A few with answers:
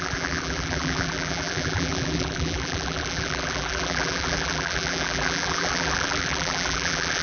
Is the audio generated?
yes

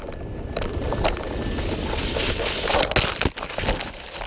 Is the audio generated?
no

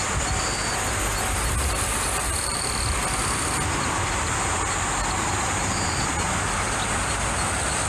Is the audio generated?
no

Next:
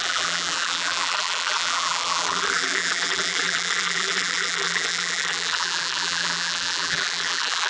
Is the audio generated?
yes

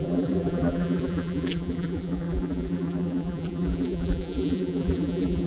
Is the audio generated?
yes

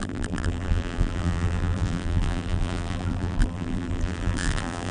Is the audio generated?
yes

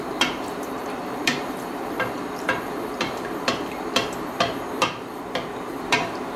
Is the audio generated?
yes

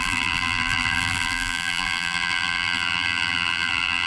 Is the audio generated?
yes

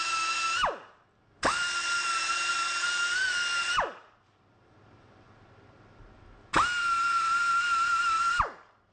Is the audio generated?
yes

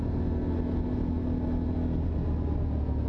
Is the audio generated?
no